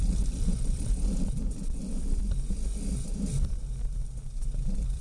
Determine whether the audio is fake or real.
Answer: fake